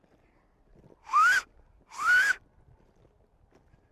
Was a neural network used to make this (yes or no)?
no